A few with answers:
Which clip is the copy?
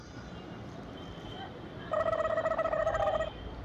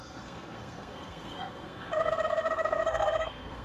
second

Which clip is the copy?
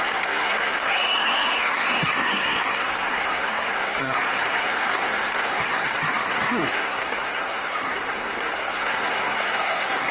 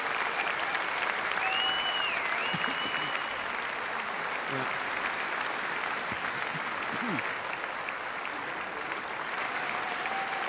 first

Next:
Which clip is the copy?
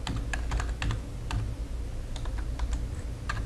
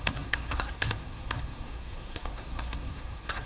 second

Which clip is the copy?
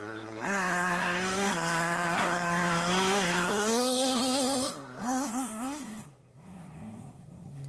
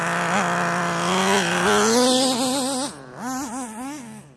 first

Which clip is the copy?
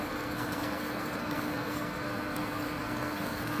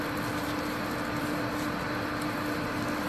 first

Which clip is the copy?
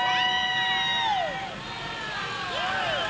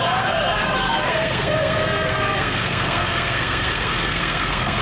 second